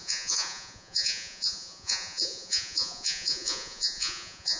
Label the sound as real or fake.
fake